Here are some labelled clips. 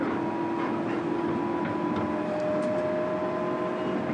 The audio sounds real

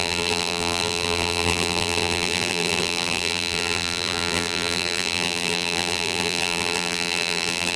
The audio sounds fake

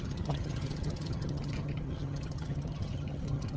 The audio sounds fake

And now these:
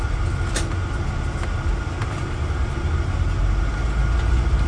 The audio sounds real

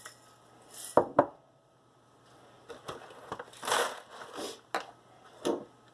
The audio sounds real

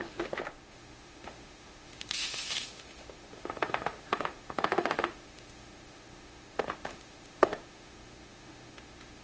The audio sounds fake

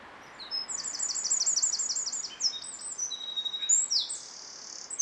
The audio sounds real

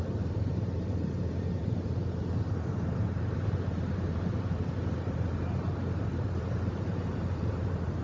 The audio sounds fake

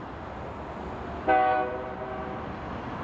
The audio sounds real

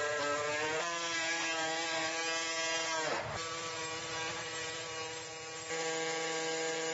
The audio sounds real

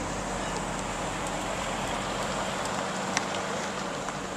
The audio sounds real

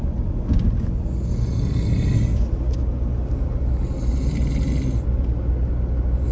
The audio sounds real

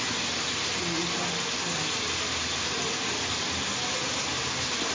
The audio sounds real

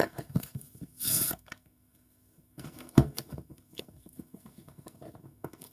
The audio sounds fake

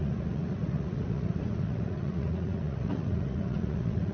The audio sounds fake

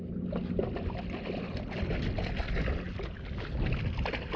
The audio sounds real